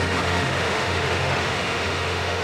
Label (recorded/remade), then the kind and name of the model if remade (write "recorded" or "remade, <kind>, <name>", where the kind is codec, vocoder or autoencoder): remade, autoencoder, DAC-VAE